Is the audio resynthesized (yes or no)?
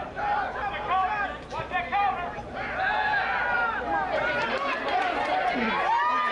yes